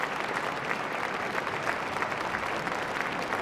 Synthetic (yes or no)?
no